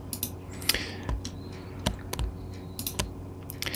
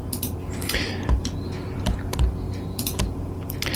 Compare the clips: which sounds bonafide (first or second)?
first